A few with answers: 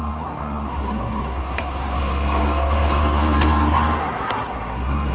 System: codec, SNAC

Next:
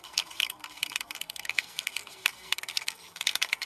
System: codec, SNAC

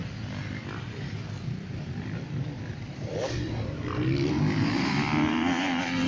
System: none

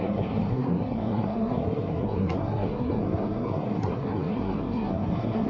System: codec, SNAC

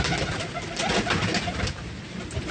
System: none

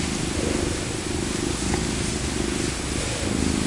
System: none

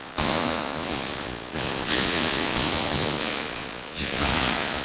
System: vocoder, Vocos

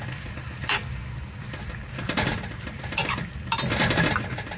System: none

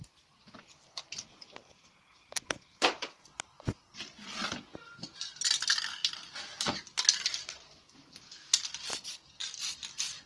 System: none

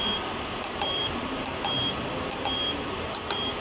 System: none